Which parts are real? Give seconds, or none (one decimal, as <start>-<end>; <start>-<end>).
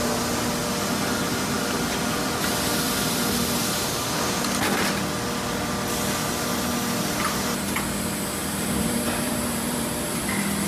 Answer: 0.0-8.4; 10.2-10.7